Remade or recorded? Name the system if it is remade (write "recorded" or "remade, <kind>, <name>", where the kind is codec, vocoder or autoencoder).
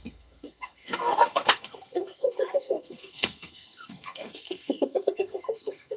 remade, codec, SNAC